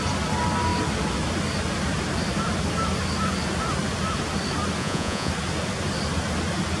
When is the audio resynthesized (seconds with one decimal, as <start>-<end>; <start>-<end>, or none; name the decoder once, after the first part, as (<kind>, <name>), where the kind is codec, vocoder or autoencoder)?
4.8-5.3 (vocoder, Vocos)